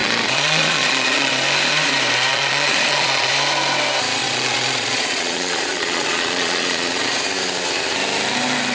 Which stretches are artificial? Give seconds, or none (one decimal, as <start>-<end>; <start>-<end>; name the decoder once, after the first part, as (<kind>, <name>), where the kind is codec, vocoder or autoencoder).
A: 0.0-1.3 (vocoder, Vocos); 2.3-3.3; 4.2-7.2

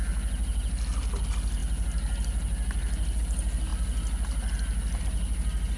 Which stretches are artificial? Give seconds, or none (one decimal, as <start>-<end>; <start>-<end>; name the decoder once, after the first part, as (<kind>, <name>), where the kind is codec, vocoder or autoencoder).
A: none

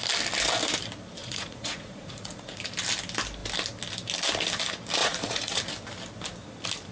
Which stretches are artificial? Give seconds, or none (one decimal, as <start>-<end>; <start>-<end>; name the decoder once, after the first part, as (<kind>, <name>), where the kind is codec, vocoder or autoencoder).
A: 1.2-2.6 (vocoder, Vocos); 5.0-5.6

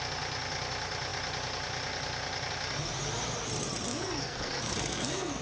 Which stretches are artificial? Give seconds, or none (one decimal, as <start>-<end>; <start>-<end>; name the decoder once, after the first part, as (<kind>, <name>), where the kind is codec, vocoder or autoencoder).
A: 3.9-5.4 (codec, SNAC)